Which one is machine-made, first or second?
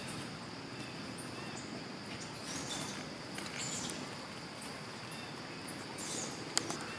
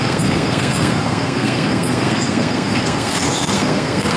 second